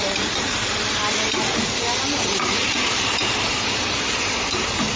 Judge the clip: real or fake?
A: fake